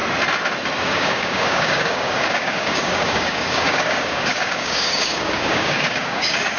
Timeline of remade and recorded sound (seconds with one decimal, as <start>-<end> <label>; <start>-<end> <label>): 0.0-0.8 recorded; 0.8-6.6 remade